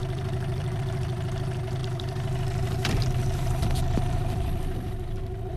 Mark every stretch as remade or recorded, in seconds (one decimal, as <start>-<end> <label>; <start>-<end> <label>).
0.0-0.8 remade; 0.8-1.8 recorded; 1.8-5.6 remade